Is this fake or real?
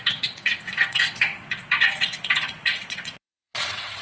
fake